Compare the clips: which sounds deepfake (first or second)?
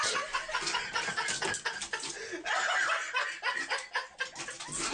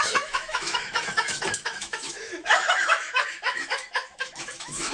second